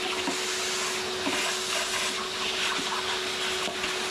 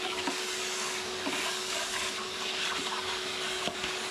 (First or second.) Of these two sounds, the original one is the first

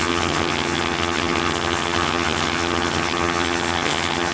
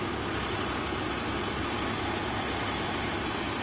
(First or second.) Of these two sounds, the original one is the second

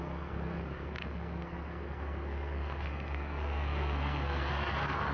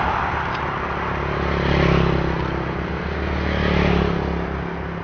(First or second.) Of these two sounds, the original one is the second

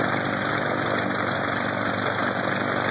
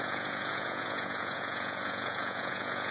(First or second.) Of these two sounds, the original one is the first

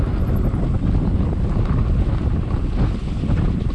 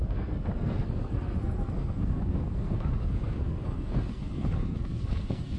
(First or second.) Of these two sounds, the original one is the first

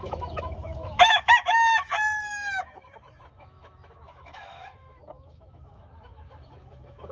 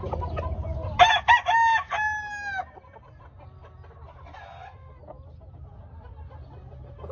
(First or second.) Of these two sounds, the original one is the second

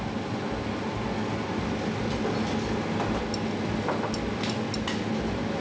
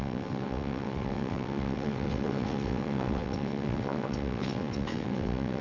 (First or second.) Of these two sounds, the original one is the first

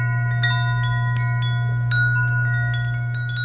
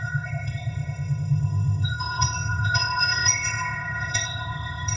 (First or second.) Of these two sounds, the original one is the first